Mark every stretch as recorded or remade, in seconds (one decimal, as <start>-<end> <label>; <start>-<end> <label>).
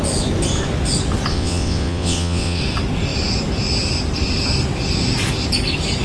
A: 0.0-1.3 recorded; 1.3-2.6 remade; 2.6-6.0 recorded